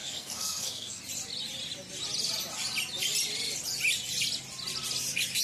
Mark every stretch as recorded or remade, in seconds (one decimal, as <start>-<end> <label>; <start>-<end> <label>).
0.0-1.0 remade; 1.0-5.4 recorded